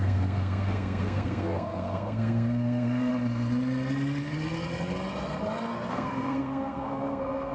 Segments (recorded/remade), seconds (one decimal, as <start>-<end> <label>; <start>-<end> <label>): 0.0-3.1 remade; 3.1-5.9 recorded; 5.9-7.5 remade